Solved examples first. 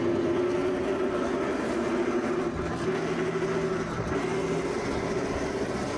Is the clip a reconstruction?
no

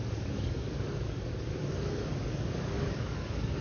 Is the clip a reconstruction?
yes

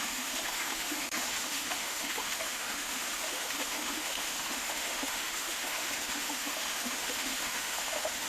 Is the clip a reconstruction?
yes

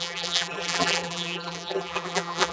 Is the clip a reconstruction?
yes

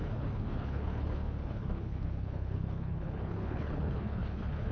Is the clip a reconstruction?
yes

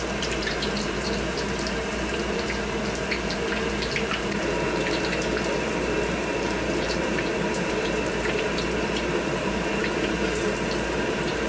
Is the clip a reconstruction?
yes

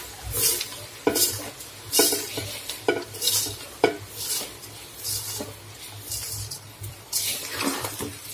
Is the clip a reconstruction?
yes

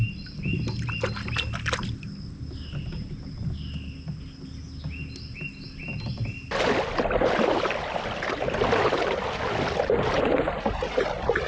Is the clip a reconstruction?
no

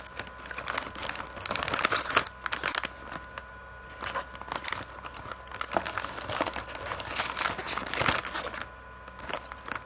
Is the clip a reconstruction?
no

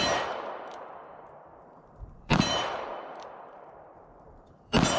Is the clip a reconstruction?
yes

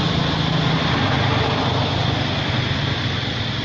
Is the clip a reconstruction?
no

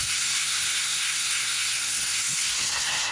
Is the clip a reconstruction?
yes